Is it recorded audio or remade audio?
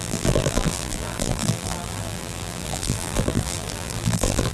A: remade